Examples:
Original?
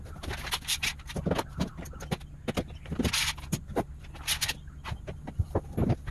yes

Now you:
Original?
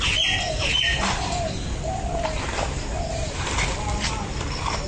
yes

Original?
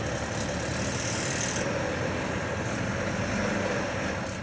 yes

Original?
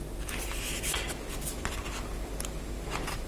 yes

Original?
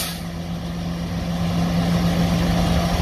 yes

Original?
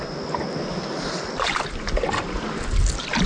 yes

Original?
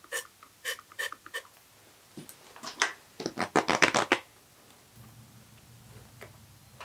yes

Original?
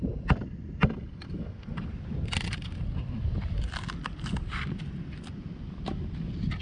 no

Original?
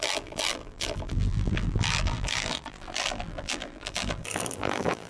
no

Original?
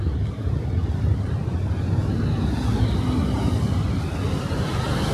yes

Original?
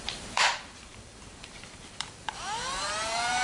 no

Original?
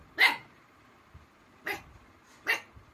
yes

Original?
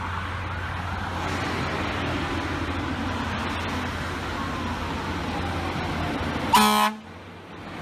yes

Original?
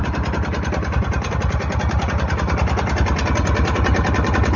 no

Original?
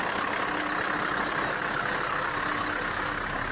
yes